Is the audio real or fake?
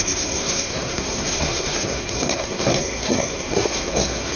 fake